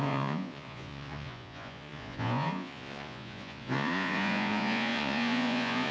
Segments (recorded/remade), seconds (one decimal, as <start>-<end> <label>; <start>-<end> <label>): 0.0-5.9 remade